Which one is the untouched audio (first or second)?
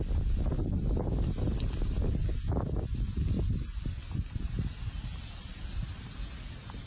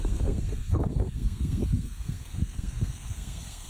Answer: first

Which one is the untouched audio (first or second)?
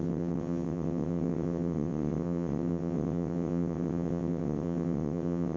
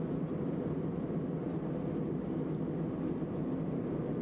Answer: second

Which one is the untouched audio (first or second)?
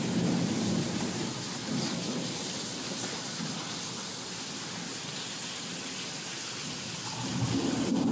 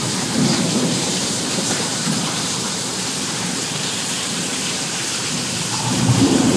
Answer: first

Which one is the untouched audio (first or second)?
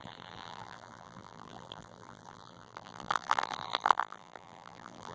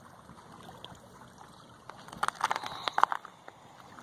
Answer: second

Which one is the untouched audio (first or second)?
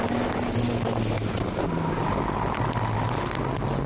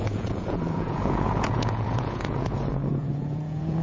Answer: first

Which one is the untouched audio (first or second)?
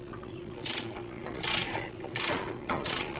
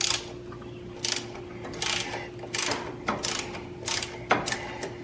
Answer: second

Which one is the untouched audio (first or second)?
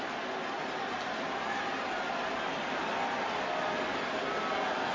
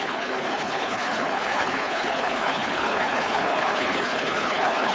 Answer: first